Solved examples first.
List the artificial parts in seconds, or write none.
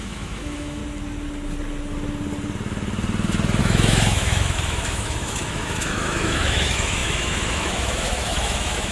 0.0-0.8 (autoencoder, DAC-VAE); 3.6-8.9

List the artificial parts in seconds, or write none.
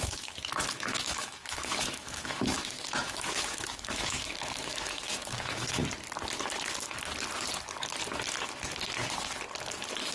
0.0-5.8 (autoencoder, DAC-VAE)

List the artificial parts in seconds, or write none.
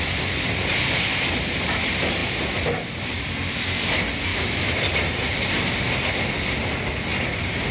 4.3-4.8 (autoencoder, DAC-VAE)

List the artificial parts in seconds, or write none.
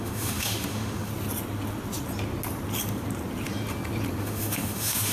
0.0-1.1 (autoencoder, DAC-VAE); 4.2-5.1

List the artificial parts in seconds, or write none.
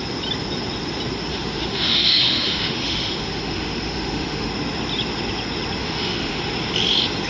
1.3-4.5 (autoencoder, DAC-VAE); 5.8-6.4